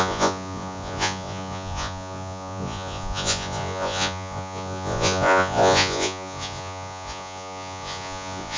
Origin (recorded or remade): remade